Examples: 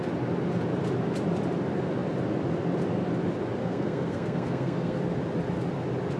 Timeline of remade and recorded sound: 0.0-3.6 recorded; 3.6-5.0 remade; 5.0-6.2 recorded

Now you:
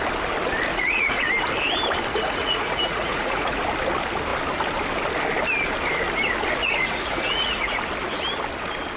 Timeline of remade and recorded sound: 0.0-0.7 recorded; 0.7-1.3 remade; 1.3-2.1 recorded; 2.1-3.6 remade; 3.6-6.6 recorded; 6.6-7.8 remade; 7.8-9.0 recorded

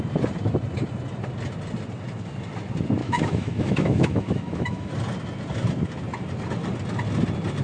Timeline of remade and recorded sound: 0.0-3.0 recorded; 3.0-4.9 remade; 4.9-7.6 recorded